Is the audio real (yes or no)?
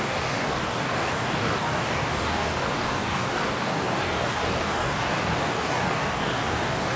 no